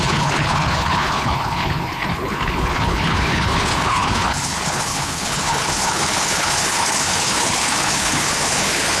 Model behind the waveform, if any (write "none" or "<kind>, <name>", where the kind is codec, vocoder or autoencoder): codec, HILCodec